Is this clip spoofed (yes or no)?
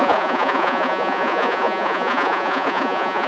yes